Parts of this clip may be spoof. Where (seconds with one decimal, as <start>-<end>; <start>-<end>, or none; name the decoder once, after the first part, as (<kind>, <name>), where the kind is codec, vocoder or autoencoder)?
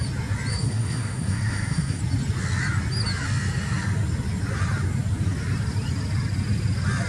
0.5-2.0 (codec, SNAC)